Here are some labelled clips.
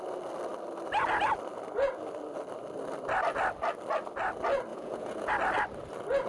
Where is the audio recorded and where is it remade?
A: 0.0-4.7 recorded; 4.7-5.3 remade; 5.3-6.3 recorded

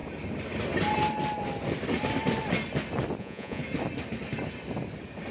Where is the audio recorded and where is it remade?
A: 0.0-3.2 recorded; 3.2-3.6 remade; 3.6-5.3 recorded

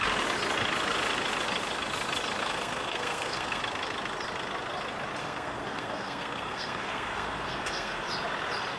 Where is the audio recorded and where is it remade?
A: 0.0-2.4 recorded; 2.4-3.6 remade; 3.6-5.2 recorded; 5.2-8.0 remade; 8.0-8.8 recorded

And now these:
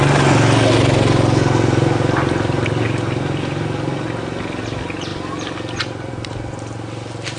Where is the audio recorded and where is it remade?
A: 0.0-7.4 recorded

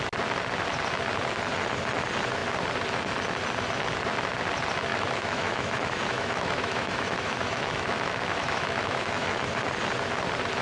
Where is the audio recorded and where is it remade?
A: 0.0-4.9 recorded; 4.9-9.7 remade; 9.7-10.6 recorded